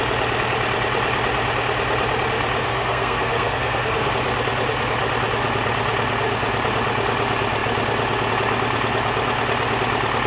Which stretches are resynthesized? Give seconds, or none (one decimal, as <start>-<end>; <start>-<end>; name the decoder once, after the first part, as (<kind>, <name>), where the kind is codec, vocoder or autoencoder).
2.6-4.1 (codec, SNAC)